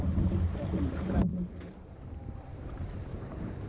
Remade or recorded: remade